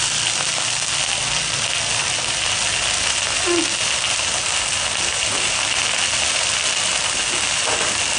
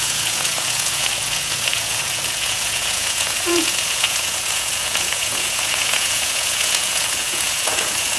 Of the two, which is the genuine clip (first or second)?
first